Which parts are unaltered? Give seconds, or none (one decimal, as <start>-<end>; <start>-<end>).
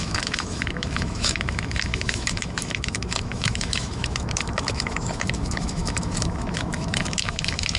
none